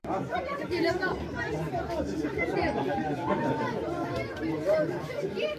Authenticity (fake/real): fake